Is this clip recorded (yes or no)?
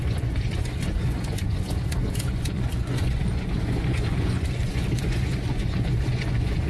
no